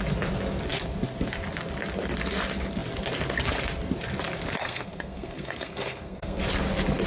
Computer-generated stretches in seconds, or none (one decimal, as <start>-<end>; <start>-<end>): 4.6-6.4